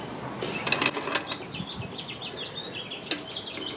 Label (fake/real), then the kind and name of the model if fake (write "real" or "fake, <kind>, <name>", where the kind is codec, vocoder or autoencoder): real